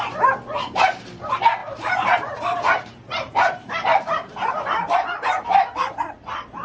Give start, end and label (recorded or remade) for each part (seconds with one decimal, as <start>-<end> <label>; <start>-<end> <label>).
0.0-1.6 recorded; 1.6-4.5 remade; 4.5-6.6 recorded